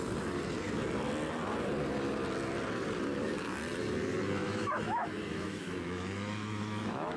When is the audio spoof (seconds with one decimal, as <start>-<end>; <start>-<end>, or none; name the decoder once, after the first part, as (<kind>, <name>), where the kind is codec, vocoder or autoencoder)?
4.4-7.2 (autoencoder, DAC-VAE)